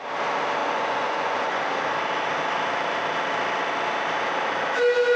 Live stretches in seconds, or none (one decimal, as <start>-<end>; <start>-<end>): 0.0-0.6; 1.6-5.2